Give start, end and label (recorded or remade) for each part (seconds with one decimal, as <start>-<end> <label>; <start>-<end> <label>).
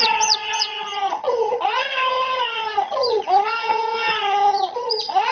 0.0-5.3 remade